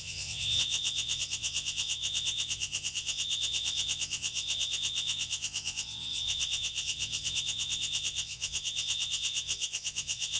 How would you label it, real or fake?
fake